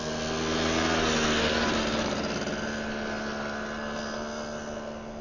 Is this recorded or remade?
recorded